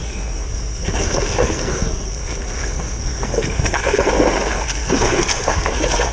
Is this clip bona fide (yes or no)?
no